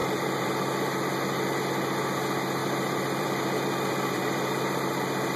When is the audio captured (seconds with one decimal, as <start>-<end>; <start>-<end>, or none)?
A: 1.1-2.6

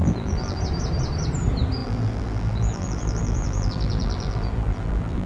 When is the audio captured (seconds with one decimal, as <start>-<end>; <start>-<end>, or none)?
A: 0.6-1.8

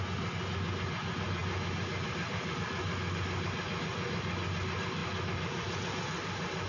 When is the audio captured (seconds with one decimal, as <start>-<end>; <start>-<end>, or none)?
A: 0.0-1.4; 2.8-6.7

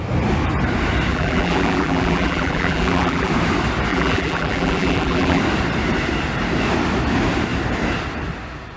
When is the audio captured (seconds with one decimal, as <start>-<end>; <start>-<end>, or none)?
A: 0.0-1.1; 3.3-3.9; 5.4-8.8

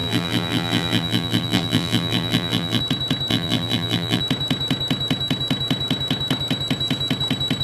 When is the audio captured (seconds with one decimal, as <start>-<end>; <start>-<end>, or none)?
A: 2.8-3.3; 4.2-7.6

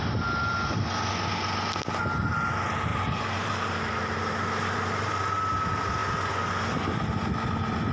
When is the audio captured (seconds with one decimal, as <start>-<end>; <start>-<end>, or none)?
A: 0.0-2.9; 5.1-7.9